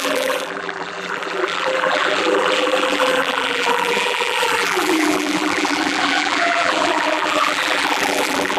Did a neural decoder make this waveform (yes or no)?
yes